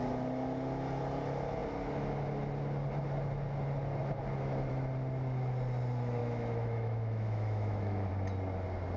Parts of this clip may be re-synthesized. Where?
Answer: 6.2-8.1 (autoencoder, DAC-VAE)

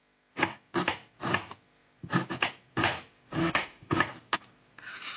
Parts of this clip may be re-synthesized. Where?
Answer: 3.4-4.0 (autoencoder, DAC-VAE)

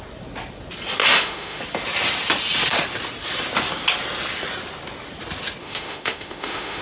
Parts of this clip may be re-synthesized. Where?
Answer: 1.0-1.6 (autoencoder, DAC-VAE); 5.6-6.8

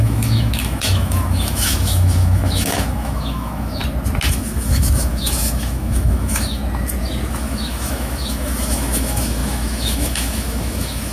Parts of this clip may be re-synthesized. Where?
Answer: 0.0-3.8 (autoencoder, DAC-VAE); 4.3-6.6; 7.3-11.1

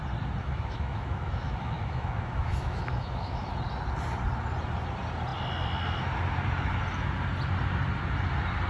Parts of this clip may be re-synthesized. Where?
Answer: 0.4-3.5 (autoencoder, DAC-VAE)